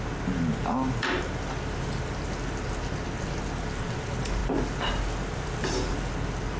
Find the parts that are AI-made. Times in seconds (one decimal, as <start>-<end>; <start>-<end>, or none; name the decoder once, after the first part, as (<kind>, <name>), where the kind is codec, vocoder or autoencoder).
none